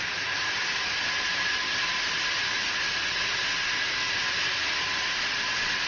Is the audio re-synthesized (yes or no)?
no